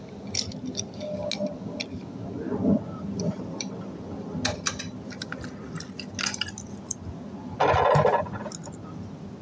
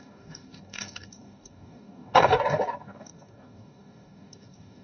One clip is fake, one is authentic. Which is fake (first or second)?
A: second